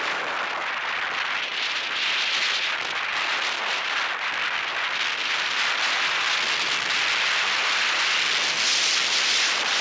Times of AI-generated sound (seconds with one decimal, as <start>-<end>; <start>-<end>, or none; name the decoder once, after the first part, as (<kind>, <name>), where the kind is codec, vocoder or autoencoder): none